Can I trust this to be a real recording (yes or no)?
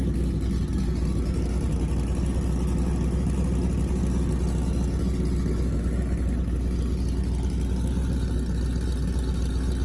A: yes